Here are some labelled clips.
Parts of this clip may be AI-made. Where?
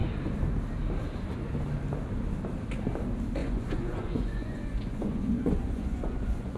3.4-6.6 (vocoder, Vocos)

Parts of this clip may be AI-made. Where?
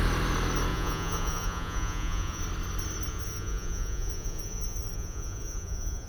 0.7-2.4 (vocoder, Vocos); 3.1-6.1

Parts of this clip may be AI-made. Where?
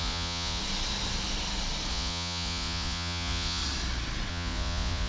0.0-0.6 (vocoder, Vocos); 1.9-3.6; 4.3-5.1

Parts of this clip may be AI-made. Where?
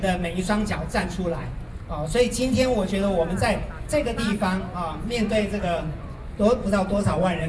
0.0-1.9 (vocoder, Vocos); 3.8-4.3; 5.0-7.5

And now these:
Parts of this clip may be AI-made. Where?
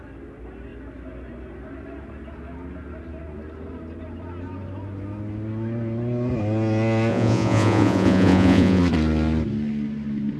7.1-8.8 (vocoder, Vocos)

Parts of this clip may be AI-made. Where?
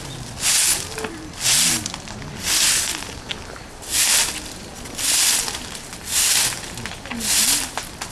none